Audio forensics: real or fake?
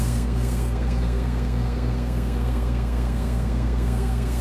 fake